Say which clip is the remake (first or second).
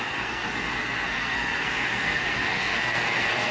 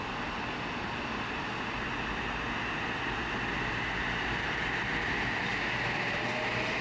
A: first